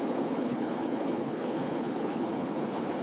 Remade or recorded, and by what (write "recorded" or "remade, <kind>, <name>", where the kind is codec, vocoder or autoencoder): remade, codec, HILCodec